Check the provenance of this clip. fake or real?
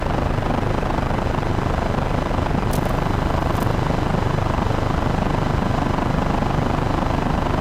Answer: real